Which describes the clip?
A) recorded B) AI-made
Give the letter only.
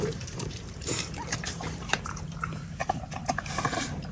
B